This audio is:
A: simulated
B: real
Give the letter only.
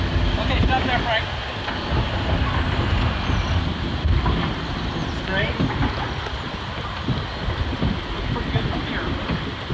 B